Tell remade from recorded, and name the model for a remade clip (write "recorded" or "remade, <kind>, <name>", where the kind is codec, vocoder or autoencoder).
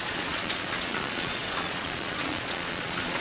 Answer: remade, vocoder, Vocos